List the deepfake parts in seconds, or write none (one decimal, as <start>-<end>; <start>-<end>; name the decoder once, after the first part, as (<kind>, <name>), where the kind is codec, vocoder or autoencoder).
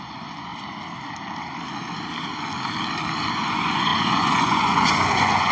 0.0-0.5 (vocoder, Vocos); 3.3-5.5